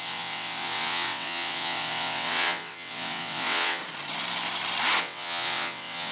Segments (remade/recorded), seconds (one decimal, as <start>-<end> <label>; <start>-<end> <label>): 0.0-3.8 remade; 3.8-5.0 recorded; 5.0-6.1 remade